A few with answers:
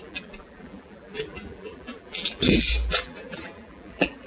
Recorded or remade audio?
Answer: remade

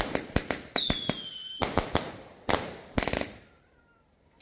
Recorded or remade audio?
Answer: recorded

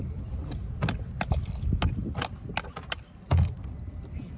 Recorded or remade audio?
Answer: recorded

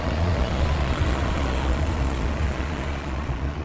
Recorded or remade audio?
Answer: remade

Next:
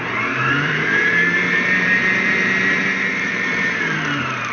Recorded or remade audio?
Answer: remade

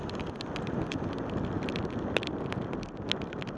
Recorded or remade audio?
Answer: recorded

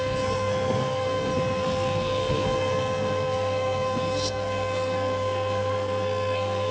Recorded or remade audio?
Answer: remade